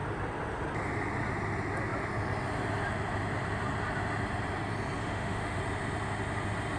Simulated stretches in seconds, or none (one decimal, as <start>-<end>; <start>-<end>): 5.0-5.6